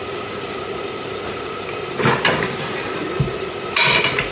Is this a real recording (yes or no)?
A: yes